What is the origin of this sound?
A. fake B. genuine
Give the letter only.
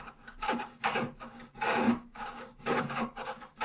A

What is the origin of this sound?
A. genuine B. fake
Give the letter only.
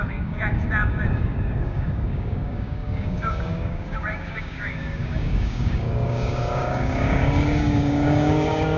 B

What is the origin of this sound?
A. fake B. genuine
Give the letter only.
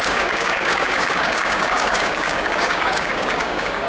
A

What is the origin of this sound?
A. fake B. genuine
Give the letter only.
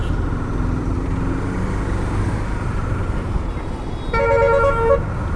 B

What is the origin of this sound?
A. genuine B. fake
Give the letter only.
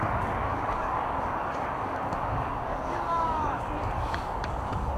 B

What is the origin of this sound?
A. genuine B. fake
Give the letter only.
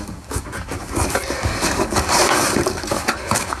B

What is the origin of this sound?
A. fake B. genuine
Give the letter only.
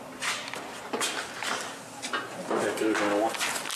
B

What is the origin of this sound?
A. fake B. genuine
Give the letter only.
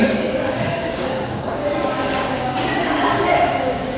A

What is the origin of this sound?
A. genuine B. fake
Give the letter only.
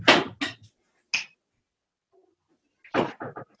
A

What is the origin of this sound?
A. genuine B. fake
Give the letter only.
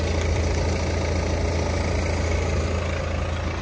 A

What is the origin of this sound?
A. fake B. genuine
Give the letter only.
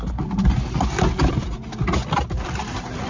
B